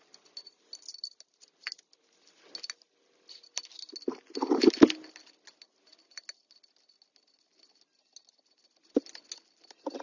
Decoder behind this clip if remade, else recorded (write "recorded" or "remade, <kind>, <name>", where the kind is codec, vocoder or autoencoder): recorded